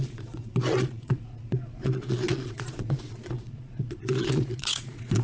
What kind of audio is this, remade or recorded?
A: remade